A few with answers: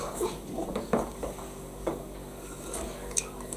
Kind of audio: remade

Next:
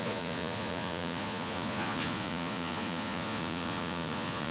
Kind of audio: remade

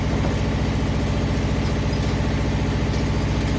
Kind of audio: recorded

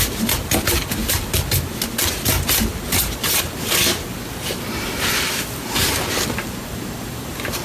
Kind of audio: recorded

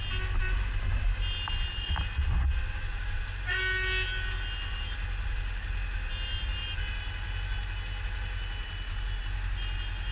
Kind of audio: recorded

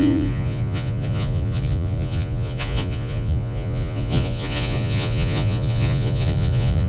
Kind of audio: remade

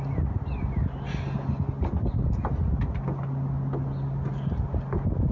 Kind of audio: recorded